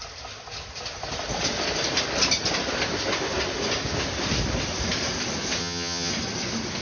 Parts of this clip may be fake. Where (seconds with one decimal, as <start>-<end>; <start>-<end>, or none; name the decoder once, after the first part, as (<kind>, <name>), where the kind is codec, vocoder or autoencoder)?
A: 5.6-6.1 (vocoder, HiFi-GAN)